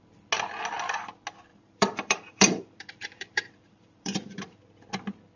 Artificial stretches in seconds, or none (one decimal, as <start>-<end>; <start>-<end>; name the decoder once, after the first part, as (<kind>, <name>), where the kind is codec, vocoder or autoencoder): 1.5-4.6 (vocoder, BigVGAN v2)